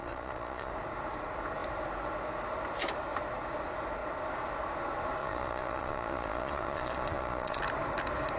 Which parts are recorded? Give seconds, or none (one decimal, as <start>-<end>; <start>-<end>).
0.7-5.2; 7.6-8.4